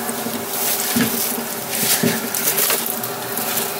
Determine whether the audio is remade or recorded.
recorded